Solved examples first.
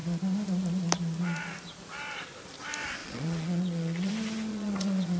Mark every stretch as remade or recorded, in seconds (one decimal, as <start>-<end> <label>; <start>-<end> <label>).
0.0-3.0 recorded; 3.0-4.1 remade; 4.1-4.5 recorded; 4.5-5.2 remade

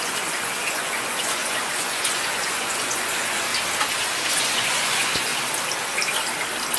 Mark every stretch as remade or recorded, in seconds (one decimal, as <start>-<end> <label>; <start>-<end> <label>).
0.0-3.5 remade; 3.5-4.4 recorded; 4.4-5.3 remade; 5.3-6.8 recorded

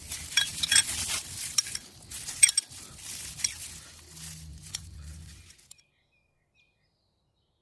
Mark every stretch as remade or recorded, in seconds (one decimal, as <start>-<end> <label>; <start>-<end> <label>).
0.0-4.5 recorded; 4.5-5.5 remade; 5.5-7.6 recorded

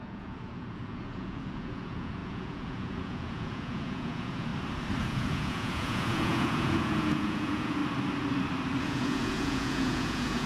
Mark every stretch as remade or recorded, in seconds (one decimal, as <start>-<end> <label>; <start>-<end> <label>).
0.0-4.5 remade; 4.5-5.0 recorded; 5.0-7.8 remade; 7.8-8.8 recorded; 8.8-10.5 remade